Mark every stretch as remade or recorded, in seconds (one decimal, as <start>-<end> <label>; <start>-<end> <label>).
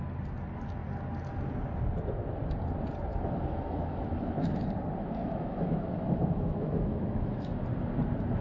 0.0-3.1 recorded; 3.1-4.6 remade; 4.6-5.2 recorded; 5.2-7.6 remade; 7.6-8.4 recorded